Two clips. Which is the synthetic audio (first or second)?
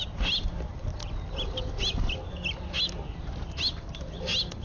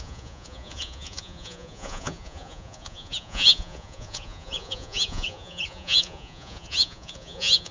second